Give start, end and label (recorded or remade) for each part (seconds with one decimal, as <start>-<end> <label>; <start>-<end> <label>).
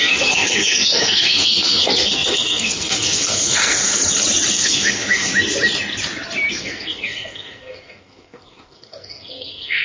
0.0-3.9 remade; 3.9-4.5 recorded; 4.5-5.3 remade; 5.3-6.5 recorded; 6.5-9.8 remade